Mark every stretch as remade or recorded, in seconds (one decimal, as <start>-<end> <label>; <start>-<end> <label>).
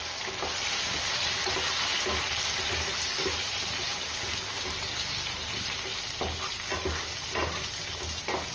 0.0-8.5 recorded